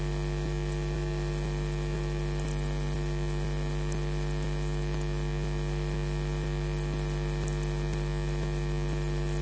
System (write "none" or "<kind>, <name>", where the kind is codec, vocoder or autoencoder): none